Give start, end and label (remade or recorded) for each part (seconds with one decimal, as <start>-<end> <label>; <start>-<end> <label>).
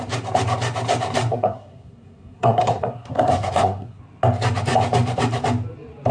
0.0-1.3 recorded; 1.3-4.0 remade; 4.0-6.1 recorded